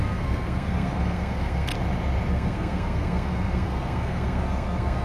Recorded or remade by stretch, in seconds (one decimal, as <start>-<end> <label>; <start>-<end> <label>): 0.0-1.7 remade; 1.7-2.3 recorded; 2.3-5.0 remade